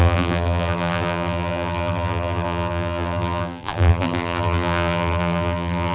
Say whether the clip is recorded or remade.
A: remade